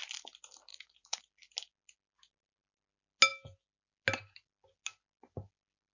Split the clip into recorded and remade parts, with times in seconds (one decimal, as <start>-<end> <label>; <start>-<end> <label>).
0.0-0.7 recorded; 0.7-1.2 remade; 1.2-5.9 recorded